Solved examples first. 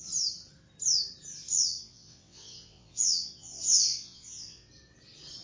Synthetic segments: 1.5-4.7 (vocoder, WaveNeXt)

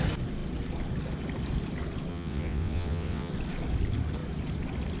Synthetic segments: 2.1-3.3 (vocoder, WaveNeXt)

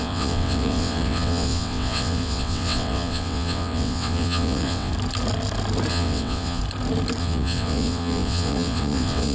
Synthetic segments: 0.0-4.9 (vocoder, WaveNeXt); 5.9-6.6; 7.2-9.3

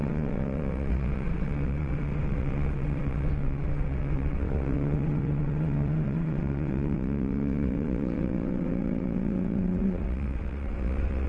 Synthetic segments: 0.0-11.3 (vocoder, WaveNeXt)

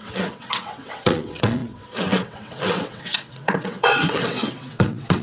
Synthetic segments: 0.0-5.2 (vocoder, WaveNeXt)

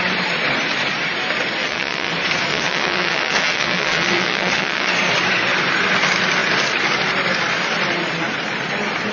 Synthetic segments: 1.6-2.1 (vocoder, WaveNeXt); 2.5-4.9

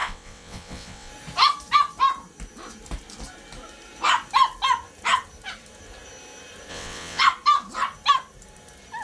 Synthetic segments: 0.0-1.1 (vocoder, WaveNeXt); 6.7-7.2